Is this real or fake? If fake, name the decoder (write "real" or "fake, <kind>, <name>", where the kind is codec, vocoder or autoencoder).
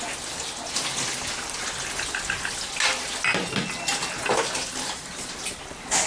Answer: real